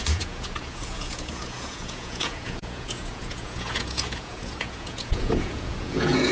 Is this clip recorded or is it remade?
remade